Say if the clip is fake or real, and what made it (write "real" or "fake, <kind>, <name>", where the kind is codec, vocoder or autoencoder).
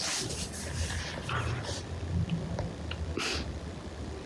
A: fake, vocoder, BigVGAN v2